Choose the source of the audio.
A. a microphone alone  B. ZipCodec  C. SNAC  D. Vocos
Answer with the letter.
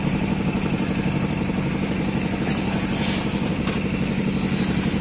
A